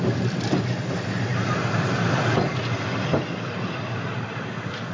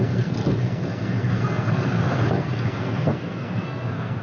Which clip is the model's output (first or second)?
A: second